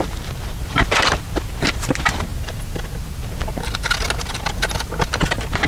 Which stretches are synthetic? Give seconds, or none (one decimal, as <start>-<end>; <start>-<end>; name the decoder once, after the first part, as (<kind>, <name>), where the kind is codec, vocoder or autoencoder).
0.0-2.3 (vocoder, BigVGAN v2); 5.3-5.7